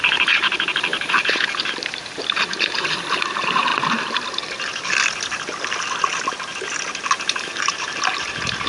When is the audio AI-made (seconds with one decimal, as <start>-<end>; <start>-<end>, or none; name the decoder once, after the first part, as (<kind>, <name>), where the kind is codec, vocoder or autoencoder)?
0.0-3.7 (vocoder, BigVGAN v2); 7.5-8.7